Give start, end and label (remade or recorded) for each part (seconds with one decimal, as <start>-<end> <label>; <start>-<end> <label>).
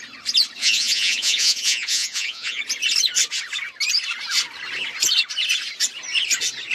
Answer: 0.0-0.6 recorded; 0.6-2.6 remade; 2.6-6.7 recorded